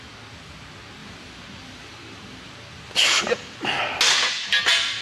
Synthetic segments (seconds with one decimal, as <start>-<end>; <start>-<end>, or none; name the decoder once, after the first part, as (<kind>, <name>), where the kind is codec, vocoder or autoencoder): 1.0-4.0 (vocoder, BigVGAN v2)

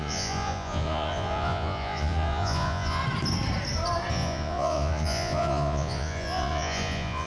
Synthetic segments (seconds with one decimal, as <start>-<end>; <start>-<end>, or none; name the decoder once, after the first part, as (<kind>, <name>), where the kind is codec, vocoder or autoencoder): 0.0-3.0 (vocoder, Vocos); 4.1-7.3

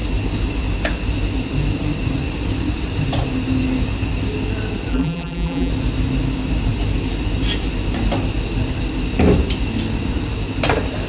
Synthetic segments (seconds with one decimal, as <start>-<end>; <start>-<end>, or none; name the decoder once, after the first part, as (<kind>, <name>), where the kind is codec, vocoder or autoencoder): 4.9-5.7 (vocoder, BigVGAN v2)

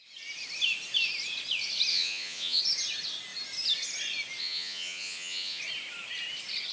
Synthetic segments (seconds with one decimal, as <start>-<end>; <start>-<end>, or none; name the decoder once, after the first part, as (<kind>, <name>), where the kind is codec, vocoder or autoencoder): 1.9-2.6 (vocoder, Vocos); 4.4-5.6

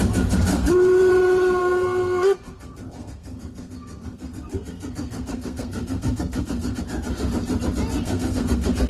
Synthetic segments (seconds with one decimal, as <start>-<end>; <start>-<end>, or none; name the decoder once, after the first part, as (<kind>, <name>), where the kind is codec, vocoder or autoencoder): 0.5-1.1 (codec, SNAC); 1.6-6.8; 7.9-8.9

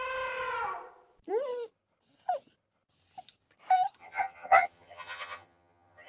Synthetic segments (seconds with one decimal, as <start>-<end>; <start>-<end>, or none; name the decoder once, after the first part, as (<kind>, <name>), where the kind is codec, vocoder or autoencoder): 4.0-6.1 (vocoder, HiFi-GAN)